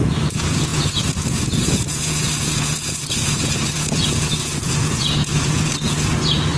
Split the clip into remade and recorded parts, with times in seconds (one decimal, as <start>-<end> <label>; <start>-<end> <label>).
0.0-6.6 remade

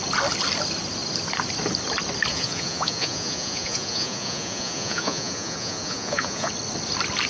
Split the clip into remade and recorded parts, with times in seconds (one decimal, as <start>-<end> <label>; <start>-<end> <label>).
0.0-2.3 recorded; 2.3-6.5 remade; 6.5-7.3 recorded

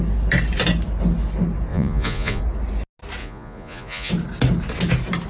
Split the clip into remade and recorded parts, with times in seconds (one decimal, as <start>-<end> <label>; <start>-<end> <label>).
0.0-1.7 recorded; 1.7-2.4 remade; 2.4-3.2 recorded; 3.2-4.1 remade; 4.1-5.3 recorded

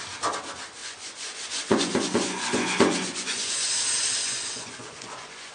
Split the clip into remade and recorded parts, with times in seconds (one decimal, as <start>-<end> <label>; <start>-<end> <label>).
0.0-0.8 recorded; 0.8-3.7 remade; 3.7-4.2 recorded; 4.2-5.5 remade

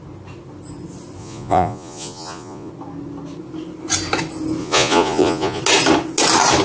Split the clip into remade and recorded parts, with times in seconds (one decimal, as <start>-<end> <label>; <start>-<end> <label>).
0.0-1.2 recorded; 1.2-2.7 remade; 2.7-4.6 recorded; 4.6-5.6 remade; 5.6-6.6 recorded

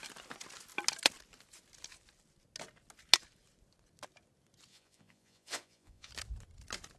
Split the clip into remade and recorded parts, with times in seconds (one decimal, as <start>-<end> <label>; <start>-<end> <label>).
0.0-4.7 recorded; 4.7-6.1 remade; 6.1-7.0 recorded

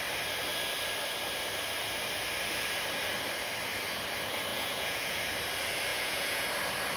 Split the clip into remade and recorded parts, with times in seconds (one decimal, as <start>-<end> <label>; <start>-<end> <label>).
0.0-4.5 recorded; 4.5-5.2 remade; 5.2-5.9 recorded; 5.9-6.5 remade; 6.5-7.0 recorded